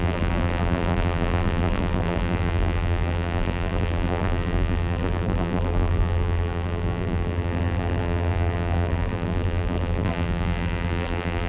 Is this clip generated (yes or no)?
yes